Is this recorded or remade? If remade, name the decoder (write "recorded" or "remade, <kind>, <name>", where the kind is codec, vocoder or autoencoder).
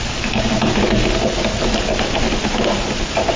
recorded